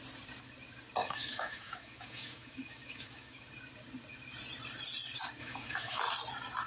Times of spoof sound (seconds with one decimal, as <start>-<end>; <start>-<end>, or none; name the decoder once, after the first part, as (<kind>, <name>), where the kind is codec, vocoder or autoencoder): 1.0-3.5 (autoencoder, DAC-VAE); 5.4-6.0

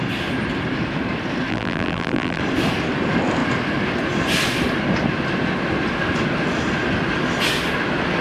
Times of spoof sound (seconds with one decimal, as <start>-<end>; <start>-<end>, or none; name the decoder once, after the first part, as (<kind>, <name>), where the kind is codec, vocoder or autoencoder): 1.5-2.4 (vocoder, BigVGAN v2)

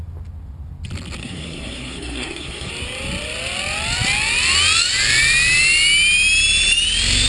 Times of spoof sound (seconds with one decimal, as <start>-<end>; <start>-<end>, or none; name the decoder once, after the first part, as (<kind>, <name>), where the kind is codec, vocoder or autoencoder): 1.2-2.7 (codec, SNAC)

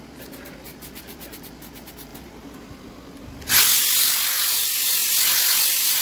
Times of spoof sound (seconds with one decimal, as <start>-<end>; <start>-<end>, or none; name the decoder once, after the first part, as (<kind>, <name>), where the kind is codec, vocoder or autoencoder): 0.7-1.6 (vocoder, BigVGAN v2)

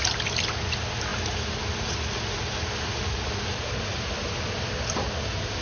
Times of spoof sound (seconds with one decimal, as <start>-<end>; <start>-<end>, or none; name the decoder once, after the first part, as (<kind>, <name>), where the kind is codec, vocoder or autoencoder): none

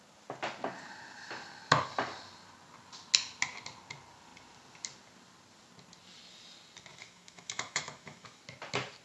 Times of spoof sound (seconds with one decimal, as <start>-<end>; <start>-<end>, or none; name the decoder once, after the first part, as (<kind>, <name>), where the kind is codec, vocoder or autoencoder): 6.9-8.4 (autoencoder, DAC-VAE)